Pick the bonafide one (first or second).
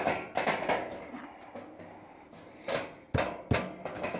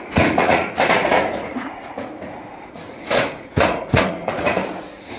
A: first